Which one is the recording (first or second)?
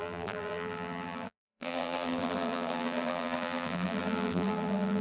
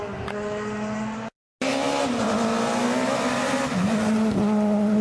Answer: second